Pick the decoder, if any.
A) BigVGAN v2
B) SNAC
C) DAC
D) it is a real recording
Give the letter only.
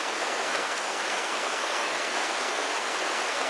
B